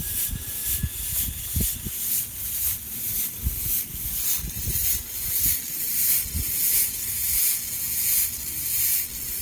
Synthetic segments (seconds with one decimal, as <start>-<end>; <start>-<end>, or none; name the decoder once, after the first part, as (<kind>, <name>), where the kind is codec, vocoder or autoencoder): 6.4-8.2 (vocoder, Vocos)